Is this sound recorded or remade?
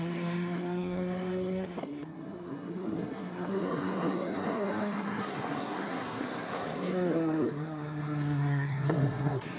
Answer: remade